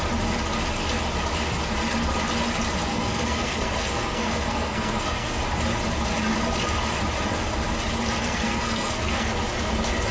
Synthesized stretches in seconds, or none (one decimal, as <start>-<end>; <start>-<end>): 2.9-5.4; 8.2-9.3